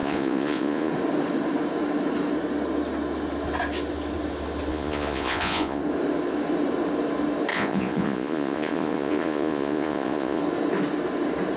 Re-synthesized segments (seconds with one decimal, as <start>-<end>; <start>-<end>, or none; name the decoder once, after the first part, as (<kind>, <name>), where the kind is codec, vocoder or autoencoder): 0.0-0.9 (vocoder, Vocos); 4.7-5.8; 7.5-10.4